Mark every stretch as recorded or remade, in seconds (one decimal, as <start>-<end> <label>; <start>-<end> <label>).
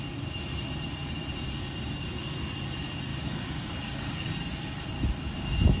0.0-3.1 recorded; 3.1-4.3 remade; 4.3-5.8 recorded